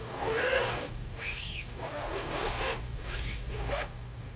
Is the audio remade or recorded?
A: remade